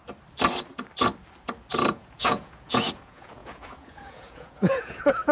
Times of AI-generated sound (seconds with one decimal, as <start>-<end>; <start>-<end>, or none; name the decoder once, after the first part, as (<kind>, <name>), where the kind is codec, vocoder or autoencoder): 1.9-5.3 (vocoder, Vocos)